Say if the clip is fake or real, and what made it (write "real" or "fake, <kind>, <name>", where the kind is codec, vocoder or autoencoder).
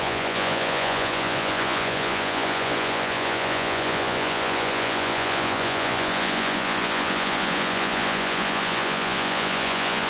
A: fake, vocoder, Vocos